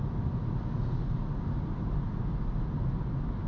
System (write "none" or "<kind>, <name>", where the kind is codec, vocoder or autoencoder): none